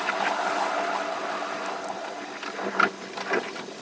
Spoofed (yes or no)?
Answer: no